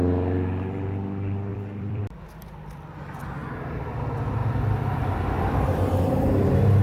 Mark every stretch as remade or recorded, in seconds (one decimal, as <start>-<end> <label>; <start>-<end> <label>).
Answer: 0.0-1.5 recorded; 1.5-2.0 remade; 2.0-4.4 recorded; 4.4-6.0 remade; 6.0-6.8 recorded